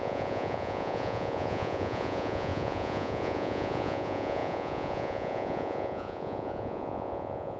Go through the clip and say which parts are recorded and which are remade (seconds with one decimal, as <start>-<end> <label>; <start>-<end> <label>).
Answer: 0.0-7.6 remade